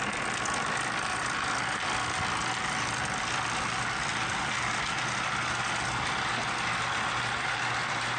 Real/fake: real